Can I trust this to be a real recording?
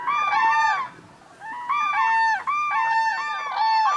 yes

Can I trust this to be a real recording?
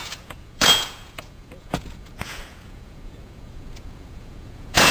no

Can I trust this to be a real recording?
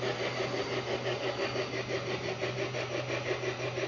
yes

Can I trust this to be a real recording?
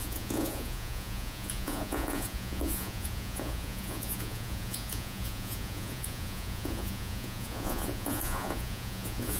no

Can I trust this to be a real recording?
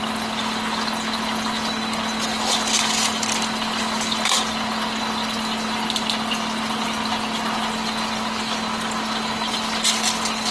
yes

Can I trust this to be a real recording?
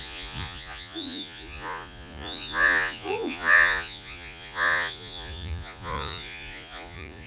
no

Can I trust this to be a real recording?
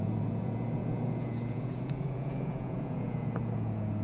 no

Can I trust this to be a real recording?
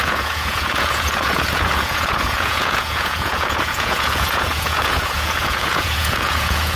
no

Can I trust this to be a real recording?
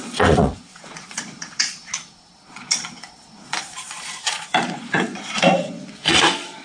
no